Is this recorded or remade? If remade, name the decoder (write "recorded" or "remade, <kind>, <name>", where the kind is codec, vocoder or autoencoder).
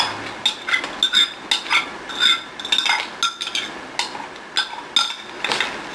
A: recorded